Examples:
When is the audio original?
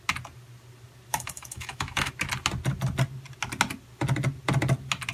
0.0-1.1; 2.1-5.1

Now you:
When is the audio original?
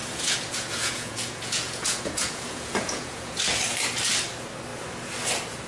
3.4-5.7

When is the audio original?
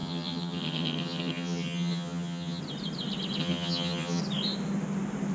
2.6-3.4; 4.2-5.3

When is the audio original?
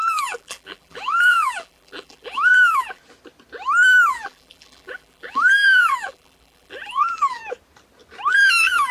3.0-4.1; 7.4-8.3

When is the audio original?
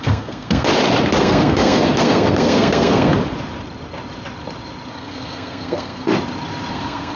0.7-1.2; 3.1-4.9; 6.1-6.7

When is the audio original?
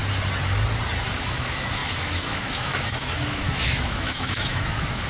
0.0-1.1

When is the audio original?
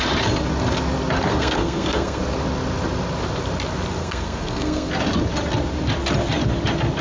0.0-1.3; 2.2-4.0; 4.9-7.0